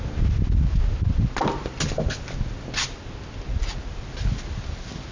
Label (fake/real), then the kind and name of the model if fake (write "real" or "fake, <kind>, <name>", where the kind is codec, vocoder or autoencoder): real